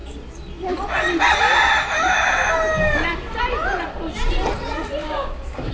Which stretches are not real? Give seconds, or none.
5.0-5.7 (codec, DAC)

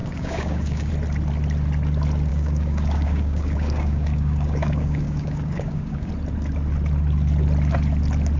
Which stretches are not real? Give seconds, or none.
0.0-0.9 (codec, DAC); 2.3-6.1

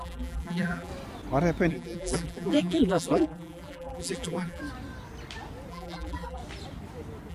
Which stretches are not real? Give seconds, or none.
0.0-0.9 (vocoder, BigVGAN v2); 1.7-4.6; 5.7-6.4

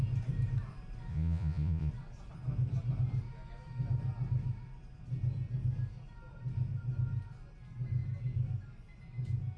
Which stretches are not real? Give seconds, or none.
1.1-1.9 (vocoder, Vocos)

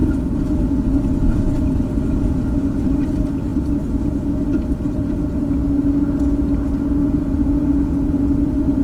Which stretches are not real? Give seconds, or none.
7.0-8.3 (vocoder, Vocos)